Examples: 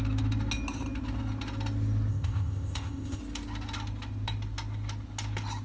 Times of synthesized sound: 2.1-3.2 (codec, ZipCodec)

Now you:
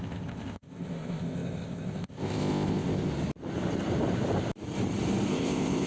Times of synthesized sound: 0.0-3.1 (codec, ZipCodec); 5.3-5.9

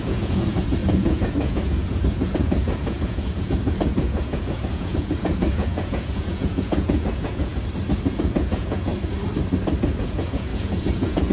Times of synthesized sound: 0.0-7.5 (vocoder, Vocos); 8.1-8.9; 9.8-11.3

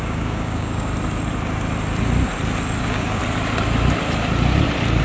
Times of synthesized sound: 0.0-0.9 (codec, DAC); 2.8-3.2